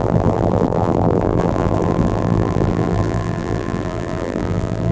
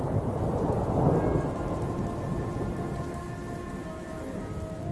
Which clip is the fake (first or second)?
first